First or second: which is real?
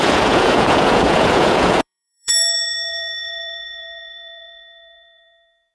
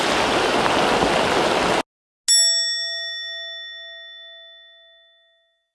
second